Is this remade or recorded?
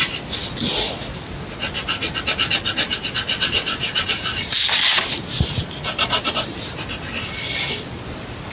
recorded